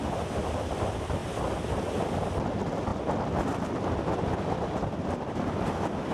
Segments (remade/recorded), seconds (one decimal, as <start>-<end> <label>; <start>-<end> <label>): 0.0-2.9 recorded; 2.9-6.1 remade